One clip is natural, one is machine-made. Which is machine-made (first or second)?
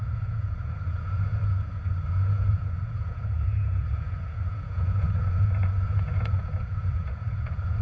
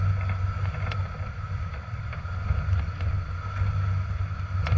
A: first